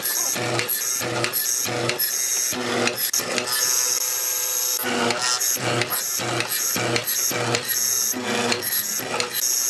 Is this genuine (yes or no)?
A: yes